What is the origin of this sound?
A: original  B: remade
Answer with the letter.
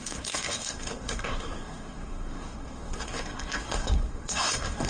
B